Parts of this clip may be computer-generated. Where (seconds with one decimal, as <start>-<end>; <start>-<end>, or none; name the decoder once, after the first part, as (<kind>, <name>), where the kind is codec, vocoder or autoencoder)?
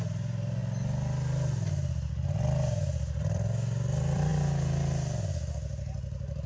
0.0-0.6 (vocoder, BigVGAN v2); 3.2-4.3